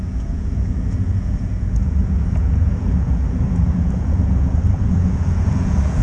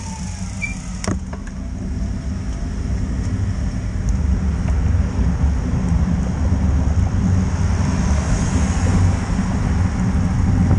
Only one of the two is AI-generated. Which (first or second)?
first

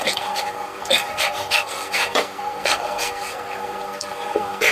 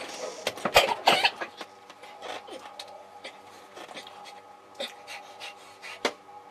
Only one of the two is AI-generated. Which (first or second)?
first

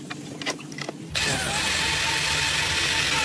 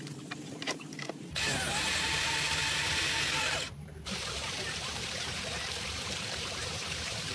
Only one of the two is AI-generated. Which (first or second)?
second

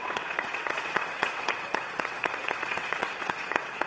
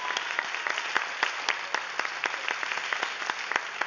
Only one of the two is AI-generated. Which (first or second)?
first